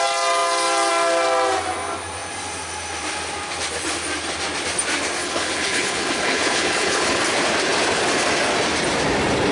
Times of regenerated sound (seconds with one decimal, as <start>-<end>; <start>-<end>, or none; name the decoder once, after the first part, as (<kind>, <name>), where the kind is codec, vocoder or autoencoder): 5.2-7.2 (codec, HILCodec)